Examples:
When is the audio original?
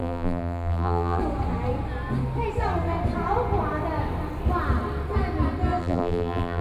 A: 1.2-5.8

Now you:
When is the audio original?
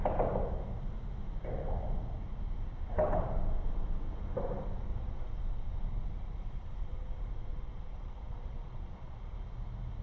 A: 0.0-4.9; 5.5-7.5; 9.4-10.0